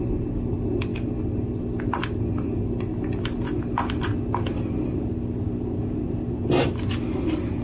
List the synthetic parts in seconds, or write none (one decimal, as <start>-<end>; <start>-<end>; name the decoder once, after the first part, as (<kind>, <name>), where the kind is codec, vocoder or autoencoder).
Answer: none